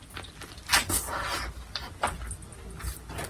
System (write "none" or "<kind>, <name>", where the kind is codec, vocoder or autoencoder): none